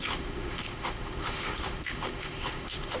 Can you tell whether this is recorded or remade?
remade